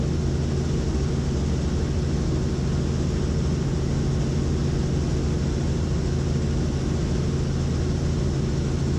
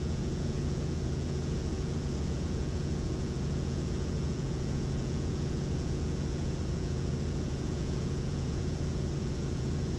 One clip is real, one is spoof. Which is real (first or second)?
first